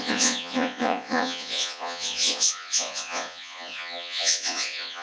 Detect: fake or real fake